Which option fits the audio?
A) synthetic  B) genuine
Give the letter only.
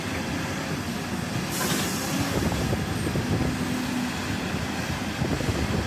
B